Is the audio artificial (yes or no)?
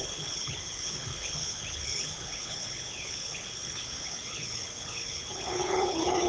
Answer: yes